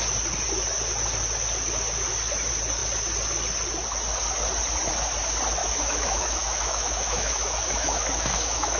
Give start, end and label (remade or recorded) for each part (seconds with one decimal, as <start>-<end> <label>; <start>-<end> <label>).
0.0-5.6 recorded; 5.6-8.8 remade

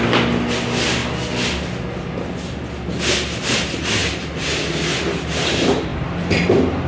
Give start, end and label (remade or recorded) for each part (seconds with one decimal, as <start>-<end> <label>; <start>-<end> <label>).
0.0-1.0 remade; 1.0-2.7 recorded; 2.7-4.0 remade; 4.0-4.7 recorded; 4.7-6.9 remade

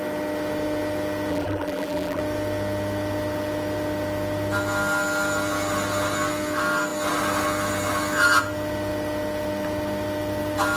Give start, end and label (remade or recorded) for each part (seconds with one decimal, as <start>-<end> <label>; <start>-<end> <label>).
0.0-1.3 recorded; 1.3-2.2 remade; 2.2-10.8 recorded